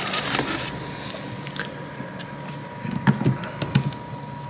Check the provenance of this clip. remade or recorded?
recorded